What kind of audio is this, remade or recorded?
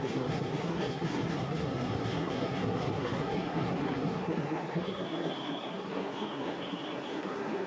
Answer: remade